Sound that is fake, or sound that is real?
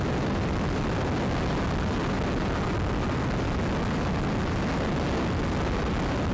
real